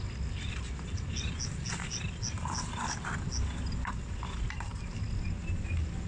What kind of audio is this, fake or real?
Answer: real